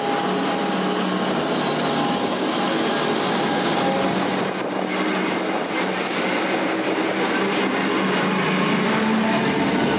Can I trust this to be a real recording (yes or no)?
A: yes